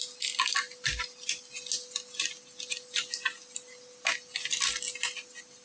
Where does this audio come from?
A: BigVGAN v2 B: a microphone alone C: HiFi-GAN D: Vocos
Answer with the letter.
B